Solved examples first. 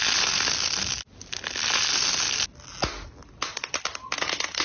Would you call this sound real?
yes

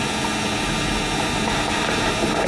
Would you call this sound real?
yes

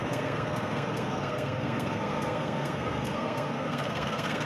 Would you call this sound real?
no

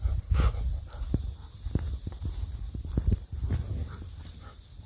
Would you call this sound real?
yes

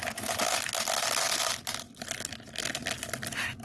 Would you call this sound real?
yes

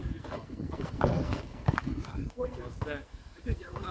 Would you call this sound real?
no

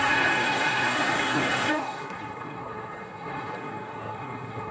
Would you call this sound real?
no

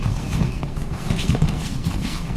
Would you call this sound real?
no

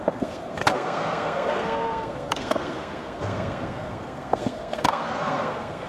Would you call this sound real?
no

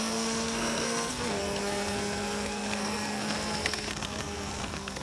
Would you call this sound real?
no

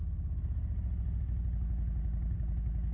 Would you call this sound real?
yes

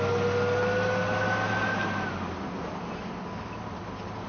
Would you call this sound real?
yes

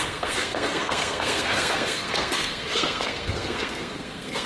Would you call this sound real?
no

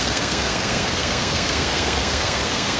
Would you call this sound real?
no